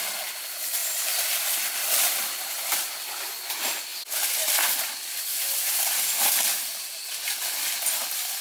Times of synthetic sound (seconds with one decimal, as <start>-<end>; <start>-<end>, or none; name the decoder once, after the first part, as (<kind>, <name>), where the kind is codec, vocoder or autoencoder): 0.8-3.2 (vocoder, BigVGAN v2); 3.9-5.8